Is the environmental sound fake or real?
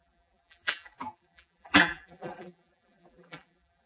fake